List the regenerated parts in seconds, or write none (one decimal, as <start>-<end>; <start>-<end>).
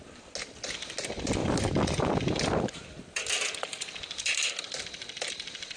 1.4-3.2; 3.7-4.8